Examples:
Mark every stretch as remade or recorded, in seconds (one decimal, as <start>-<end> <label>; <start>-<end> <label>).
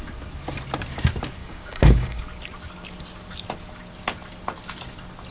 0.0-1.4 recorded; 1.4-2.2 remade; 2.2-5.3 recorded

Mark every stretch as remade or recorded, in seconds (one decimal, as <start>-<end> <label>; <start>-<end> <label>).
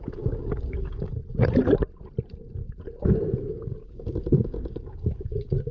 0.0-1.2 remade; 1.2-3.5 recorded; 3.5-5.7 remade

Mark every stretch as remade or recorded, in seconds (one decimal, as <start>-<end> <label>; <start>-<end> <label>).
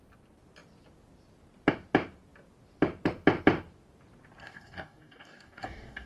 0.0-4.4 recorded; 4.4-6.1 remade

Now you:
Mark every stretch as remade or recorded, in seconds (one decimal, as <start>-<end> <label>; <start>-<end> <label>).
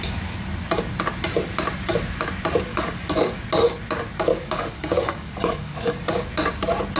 0.0-2.7 recorded; 2.7-3.4 remade; 3.4-4.3 recorded; 4.3-6.2 remade; 6.2-7.0 recorded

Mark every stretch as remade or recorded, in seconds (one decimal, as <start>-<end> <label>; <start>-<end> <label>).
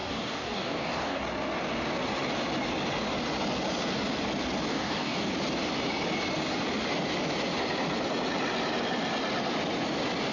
0.0-1.2 remade; 1.2-4.7 recorded; 4.7-5.3 remade; 5.3-10.3 recorded